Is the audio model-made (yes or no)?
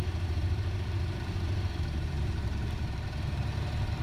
yes